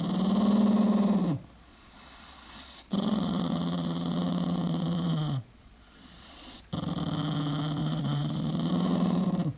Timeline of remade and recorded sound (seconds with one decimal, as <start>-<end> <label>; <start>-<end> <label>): 0.0-1.7 recorded; 1.7-6.6 remade; 6.6-7.8 recorded; 7.8-9.2 remade; 9.2-9.6 recorded